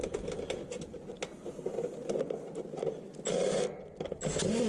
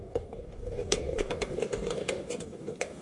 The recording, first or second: first